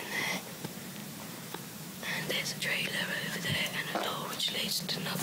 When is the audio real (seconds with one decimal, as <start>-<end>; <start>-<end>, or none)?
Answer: 3.7-5.2